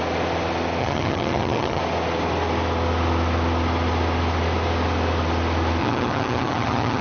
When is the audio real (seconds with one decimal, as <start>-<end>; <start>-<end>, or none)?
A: 0.0-0.8; 1.8-5.8